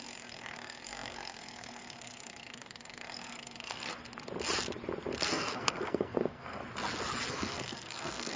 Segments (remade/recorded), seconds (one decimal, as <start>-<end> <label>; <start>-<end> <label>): 0.0-3.9 remade; 3.9-5.2 recorded; 5.2-6.6 remade; 6.6-7.3 recorded; 7.3-8.4 remade